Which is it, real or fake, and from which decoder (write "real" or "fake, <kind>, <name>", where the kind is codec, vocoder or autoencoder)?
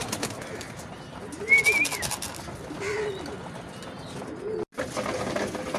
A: real